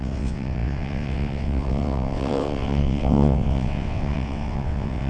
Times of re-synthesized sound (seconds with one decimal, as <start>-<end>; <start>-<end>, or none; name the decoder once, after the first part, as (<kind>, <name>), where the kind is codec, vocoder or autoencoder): 0.0-5.1 (vocoder, WaveNeXt)

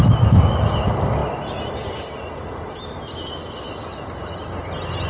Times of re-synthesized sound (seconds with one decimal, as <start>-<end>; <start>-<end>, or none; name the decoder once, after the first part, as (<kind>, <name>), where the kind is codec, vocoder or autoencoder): none